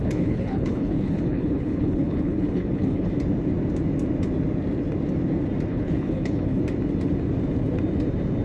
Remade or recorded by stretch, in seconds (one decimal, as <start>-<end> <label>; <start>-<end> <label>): 0.0-3.1 remade; 3.1-5.7 recorded; 5.7-6.6 remade; 6.6-8.4 recorded